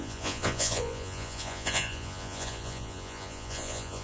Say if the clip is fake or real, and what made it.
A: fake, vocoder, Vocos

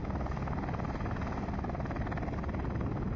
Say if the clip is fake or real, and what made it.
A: real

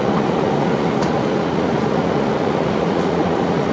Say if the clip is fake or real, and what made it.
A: fake, vocoder, Vocos